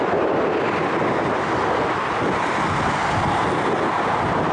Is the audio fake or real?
real